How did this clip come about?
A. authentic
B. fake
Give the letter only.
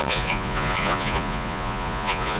B